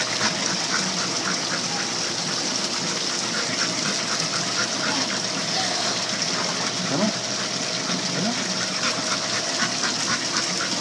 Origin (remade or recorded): recorded